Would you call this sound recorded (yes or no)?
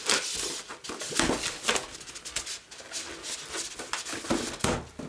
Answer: yes